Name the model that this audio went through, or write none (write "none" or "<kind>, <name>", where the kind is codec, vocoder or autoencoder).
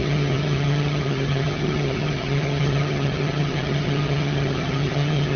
vocoder, HiFi-GAN